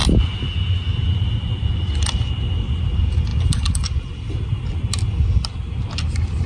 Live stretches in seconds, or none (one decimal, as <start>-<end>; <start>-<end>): 0.0-6.5